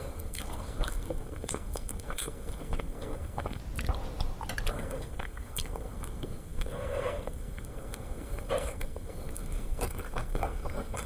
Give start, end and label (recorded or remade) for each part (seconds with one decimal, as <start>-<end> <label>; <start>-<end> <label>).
0.0-3.6 remade; 3.6-4.7 recorded; 4.7-11.1 remade